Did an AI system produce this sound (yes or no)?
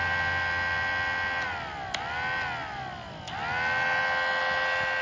no